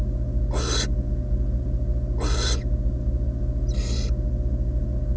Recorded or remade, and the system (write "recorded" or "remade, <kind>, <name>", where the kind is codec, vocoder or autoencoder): recorded